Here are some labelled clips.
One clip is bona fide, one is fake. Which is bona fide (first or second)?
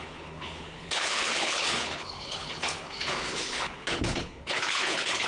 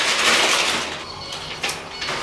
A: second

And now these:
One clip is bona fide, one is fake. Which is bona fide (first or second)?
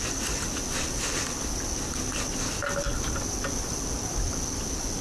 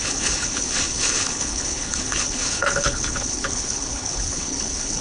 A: first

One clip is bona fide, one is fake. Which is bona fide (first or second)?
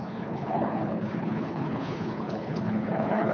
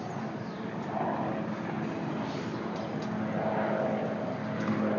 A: second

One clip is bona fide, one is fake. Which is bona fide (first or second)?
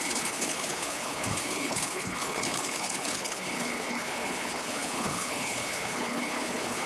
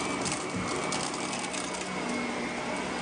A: second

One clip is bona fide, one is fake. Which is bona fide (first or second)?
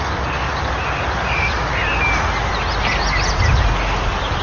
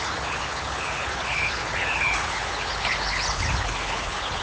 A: first